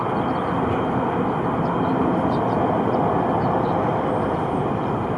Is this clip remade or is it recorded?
recorded